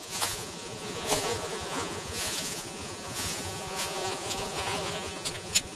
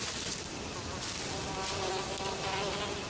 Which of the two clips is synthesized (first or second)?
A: first